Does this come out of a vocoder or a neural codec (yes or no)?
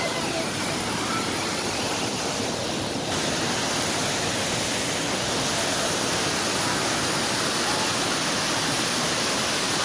no